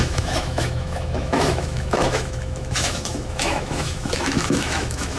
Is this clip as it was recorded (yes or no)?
no